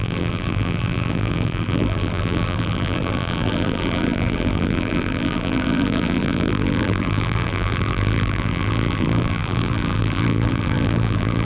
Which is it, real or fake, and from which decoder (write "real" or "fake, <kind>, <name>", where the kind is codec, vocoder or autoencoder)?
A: fake, vocoder, BigVGAN v2